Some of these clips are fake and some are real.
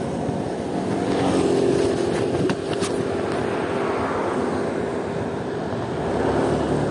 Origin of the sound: real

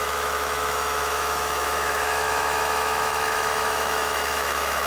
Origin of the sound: fake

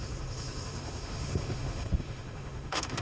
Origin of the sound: fake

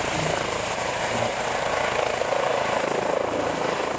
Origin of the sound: real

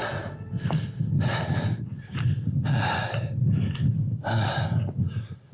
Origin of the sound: real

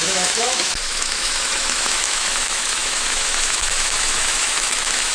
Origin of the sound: fake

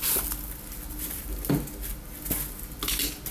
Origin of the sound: real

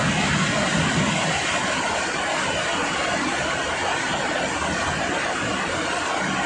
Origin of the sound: real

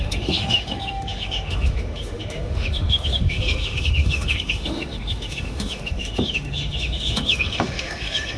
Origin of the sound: fake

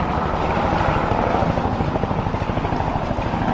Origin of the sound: real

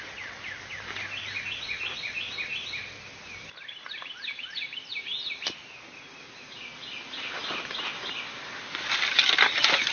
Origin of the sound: real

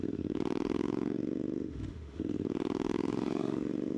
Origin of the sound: fake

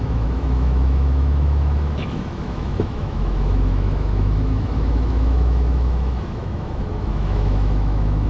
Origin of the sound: fake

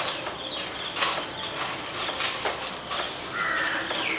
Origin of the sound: real